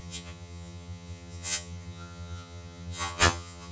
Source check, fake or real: fake